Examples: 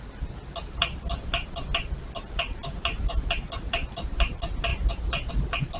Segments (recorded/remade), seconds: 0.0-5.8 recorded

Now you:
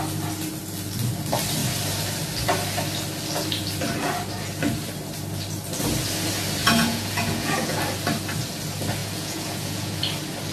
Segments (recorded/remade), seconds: 0.0-6.6 recorded; 6.6-7.8 remade; 7.8-9.0 recorded; 9.0-10.0 remade; 10.0-10.5 recorded

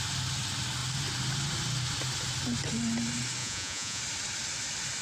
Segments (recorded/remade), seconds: 0.0-3.4 recorded; 3.4-4.0 remade; 4.0-5.0 recorded

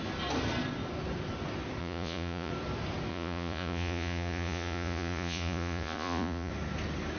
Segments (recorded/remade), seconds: 0.0-1.8 recorded; 1.8-2.5 remade; 2.5-3.1 recorded; 3.1-6.5 remade; 6.5-7.2 recorded

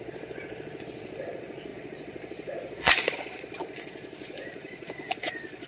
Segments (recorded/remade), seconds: 0.0-5.7 remade

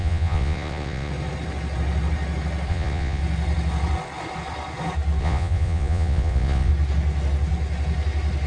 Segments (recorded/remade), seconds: 0.0-1.1 remade; 1.1-2.7 recorded; 2.7-3.2 remade; 3.2-5.2 recorded; 5.2-6.7 remade; 6.7-8.5 recorded